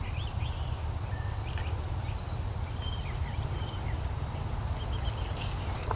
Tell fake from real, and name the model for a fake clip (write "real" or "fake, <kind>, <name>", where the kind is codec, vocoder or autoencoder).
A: real